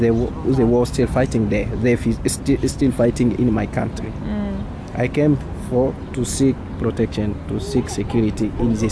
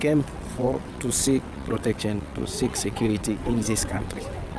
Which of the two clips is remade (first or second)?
second